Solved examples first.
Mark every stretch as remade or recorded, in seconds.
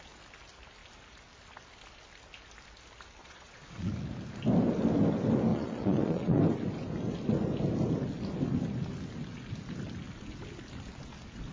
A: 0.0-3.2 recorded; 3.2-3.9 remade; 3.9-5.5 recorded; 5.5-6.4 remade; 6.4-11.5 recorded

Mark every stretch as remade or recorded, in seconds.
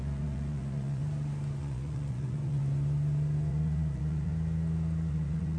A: 0.0-1.0 remade; 1.0-1.6 recorded; 1.6-2.6 remade; 2.6-3.5 recorded; 3.5-4.3 remade; 4.3-5.1 recorded; 5.1-5.6 remade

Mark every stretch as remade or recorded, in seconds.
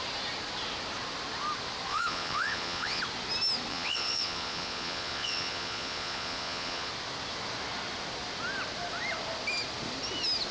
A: 0.0-1.9 recorded; 1.9-3.0 remade; 3.0-3.7 recorded; 3.7-6.9 remade; 6.9-10.5 recorded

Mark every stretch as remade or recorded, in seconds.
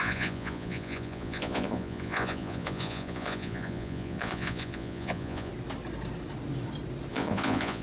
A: 0.0-5.5 remade; 5.5-7.1 recorded; 7.1-7.8 remade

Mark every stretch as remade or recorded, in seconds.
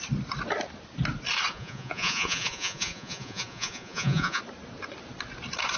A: 0.0-1.5 recorded; 1.5-4.4 remade; 4.4-5.8 recorded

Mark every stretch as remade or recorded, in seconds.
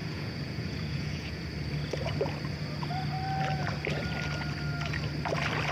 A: 0.0-1.4 remade; 1.4-5.7 recorded